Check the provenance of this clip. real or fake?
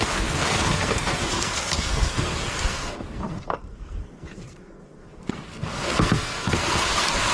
fake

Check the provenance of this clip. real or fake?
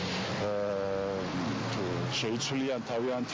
real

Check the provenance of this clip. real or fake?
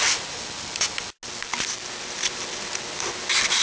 real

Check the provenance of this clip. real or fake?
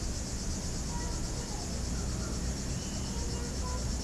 real